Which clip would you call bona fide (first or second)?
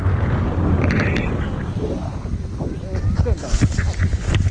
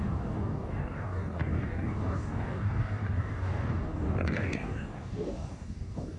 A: first